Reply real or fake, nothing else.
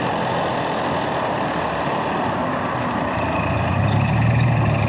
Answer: real